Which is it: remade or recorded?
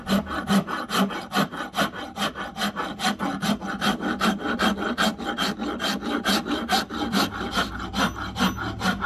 recorded